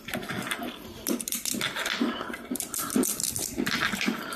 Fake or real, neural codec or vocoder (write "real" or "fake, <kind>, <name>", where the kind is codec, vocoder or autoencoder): real